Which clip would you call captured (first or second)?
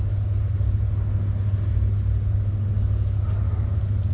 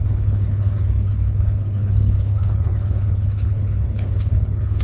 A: first